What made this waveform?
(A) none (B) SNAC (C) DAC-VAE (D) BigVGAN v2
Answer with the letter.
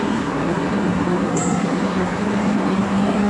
B